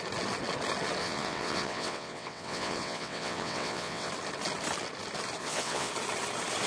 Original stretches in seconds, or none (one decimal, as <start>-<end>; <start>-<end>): 0.0-1.0; 4.1-5.4; 5.9-6.7